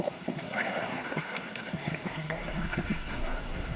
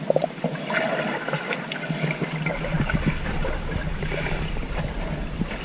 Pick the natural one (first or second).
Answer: second